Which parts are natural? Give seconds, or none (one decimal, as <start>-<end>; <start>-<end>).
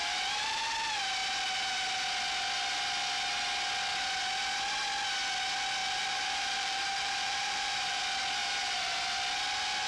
0.6-5.8; 8.0-8.4; 9.0-9.9